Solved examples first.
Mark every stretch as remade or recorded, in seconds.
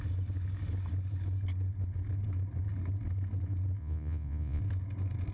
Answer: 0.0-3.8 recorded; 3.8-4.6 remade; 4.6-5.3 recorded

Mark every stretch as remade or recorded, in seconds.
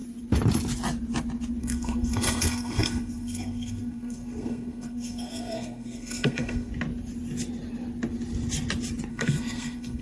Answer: 0.0-1.6 recorded; 1.6-6.7 remade; 6.7-9.1 recorded; 9.1-10.0 remade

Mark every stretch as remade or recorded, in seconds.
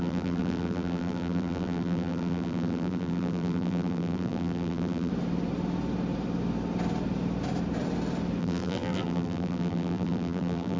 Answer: 0.0-5.1 remade; 5.1-8.4 recorded; 8.4-10.8 remade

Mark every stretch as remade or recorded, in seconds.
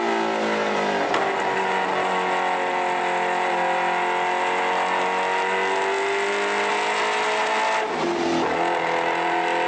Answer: 0.0-9.7 recorded